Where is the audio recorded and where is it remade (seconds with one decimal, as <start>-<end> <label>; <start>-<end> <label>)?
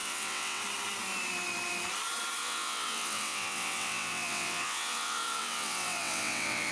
0.0-0.6 remade; 0.6-2.4 recorded; 2.4-6.7 remade